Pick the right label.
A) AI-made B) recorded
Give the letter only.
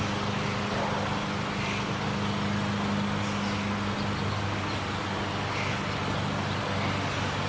B